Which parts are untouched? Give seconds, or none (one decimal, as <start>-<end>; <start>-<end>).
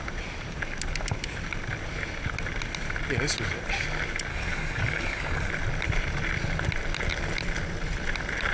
0.0-4.3; 5.5-8.5